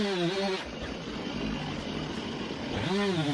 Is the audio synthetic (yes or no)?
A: no